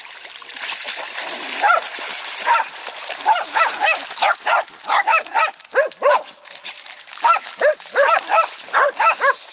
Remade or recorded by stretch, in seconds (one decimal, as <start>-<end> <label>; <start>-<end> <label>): 0.0-2.1 recorded; 2.1-3.6 remade; 3.6-9.5 recorded